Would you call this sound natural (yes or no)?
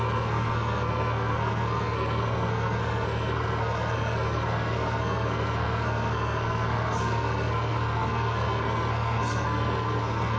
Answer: no